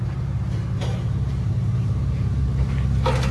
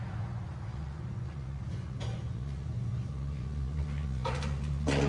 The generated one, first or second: second